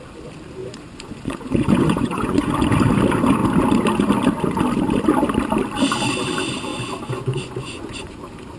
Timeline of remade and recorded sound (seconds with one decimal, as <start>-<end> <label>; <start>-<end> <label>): 0.0-0.6 recorded; 0.6-2.5 remade; 2.5-6.7 recorded; 6.7-8.2 remade; 8.2-8.6 recorded